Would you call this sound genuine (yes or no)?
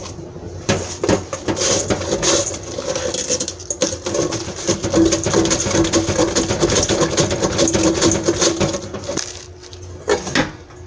yes